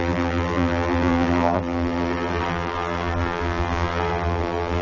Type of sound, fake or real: fake